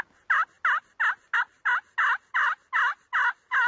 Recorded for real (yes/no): yes